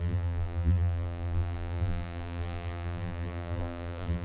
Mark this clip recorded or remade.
remade